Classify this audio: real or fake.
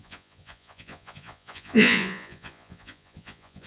fake